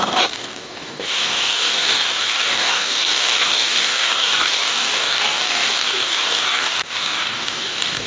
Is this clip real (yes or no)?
no